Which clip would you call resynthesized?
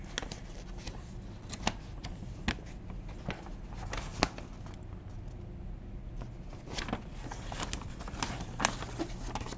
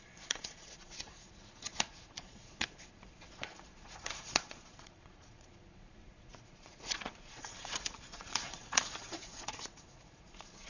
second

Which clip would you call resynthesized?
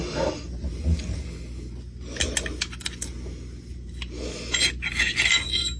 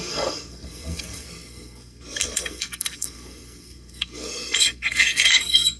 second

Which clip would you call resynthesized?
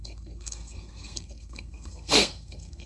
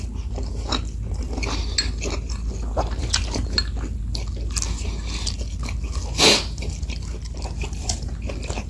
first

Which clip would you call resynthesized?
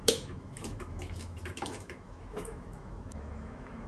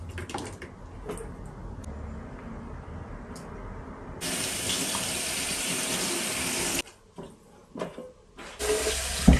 first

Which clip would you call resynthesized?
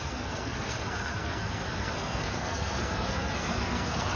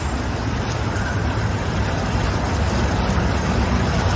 first